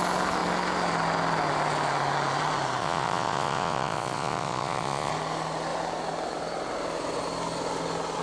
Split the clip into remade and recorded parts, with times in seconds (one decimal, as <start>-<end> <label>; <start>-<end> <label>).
0.0-2.8 recorded; 2.8-5.1 remade; 5.1-8.2 recorded